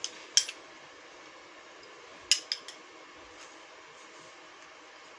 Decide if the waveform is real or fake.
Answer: real